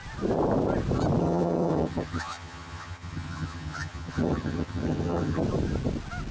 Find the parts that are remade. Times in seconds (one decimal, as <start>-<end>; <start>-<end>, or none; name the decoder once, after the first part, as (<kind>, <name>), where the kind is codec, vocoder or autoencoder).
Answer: 1.2-5.4 (vocoder, HiFi-GAN)